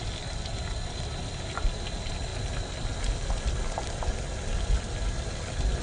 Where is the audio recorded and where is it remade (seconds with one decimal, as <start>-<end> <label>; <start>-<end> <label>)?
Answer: 0.0-5.8 recorded